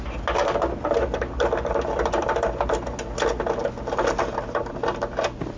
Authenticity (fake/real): real